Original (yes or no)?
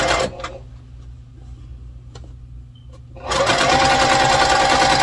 yes